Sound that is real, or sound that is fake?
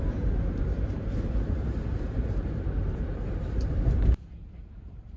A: fake